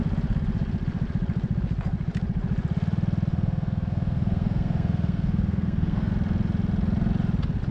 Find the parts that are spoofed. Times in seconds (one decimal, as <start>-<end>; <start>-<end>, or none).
3.3-6.1

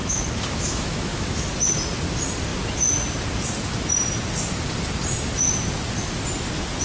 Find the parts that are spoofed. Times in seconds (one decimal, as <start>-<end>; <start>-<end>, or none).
0.0-1.5

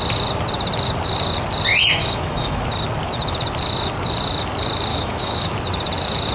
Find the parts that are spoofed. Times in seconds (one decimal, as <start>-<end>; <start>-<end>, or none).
2.0-2.6; 4.9-5.4

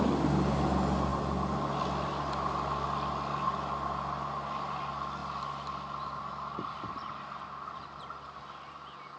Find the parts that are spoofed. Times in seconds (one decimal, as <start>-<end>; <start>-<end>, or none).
none

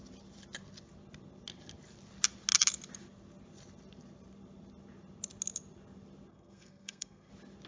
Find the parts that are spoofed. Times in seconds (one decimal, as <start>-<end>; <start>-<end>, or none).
6.3-7.3

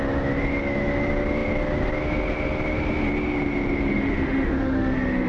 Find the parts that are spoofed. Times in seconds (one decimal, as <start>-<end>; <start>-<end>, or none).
3.9-5.3

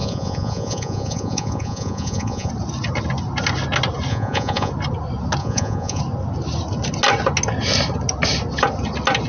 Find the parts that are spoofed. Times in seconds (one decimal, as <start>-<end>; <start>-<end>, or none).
0.0-2.5; 4.1-4.7; 5.4-6.0

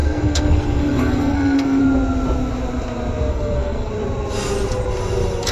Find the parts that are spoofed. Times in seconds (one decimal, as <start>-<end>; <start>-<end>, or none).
0.0-1.8; 3.3-3.9